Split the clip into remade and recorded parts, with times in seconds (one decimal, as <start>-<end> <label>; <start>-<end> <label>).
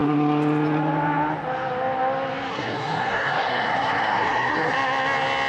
0.0-2.5 recorded; 2.5-4.7 remade; 4.7-5.5 recorded